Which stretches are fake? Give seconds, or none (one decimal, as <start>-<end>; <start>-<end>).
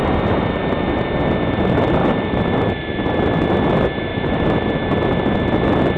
2.0-3.2; 4.1-4.7